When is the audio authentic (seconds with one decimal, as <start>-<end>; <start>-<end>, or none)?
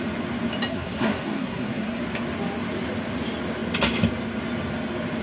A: 0.0-0.7; 2.0-5.2